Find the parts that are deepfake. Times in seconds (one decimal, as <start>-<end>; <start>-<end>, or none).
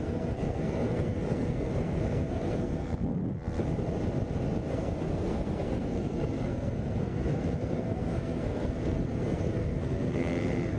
0.0-3.2; 4.7-10.8